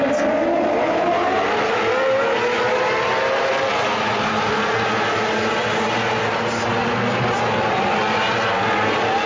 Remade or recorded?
recorded